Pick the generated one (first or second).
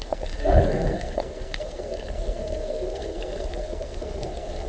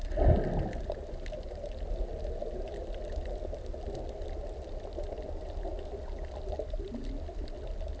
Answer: first